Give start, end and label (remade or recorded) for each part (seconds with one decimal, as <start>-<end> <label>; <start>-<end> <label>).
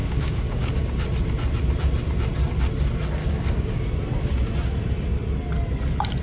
0.0-0.8 remade; 0.8-3.2 recorded; 3.2-3.9 remade; 3.9-6.2 recorded